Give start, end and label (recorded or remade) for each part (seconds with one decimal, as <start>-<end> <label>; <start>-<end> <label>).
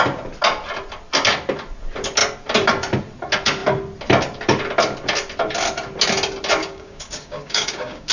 0.0-6.6 recorded; 6.6-8.1 remade